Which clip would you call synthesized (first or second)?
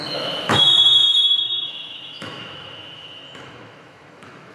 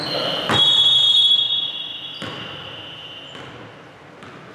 first